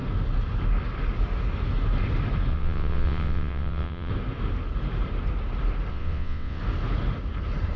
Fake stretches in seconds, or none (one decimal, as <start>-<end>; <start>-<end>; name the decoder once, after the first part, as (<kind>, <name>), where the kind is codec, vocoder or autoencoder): 2.5-4.1 (vocoder, WaveNeXt); 5.9-6.6